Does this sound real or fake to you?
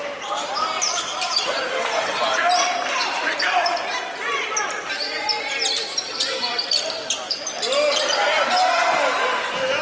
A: fake